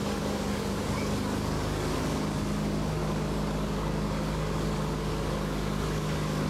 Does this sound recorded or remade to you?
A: remade